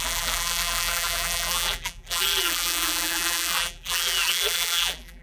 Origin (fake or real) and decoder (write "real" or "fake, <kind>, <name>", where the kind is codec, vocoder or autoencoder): fake, vocoder, BigVGAN v2